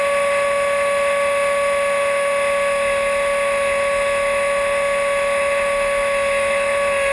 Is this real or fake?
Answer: fake